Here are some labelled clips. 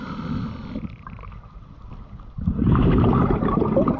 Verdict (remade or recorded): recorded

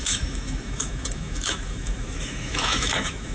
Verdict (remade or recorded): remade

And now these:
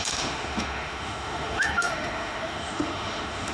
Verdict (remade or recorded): remade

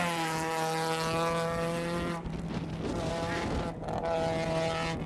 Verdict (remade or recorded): recorded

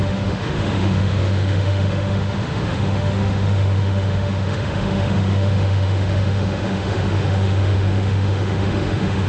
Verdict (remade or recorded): remade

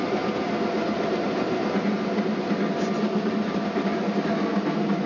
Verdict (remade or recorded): recorded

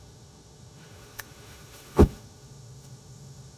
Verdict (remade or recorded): remade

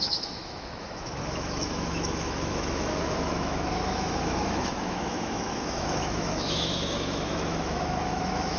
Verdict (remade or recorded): remade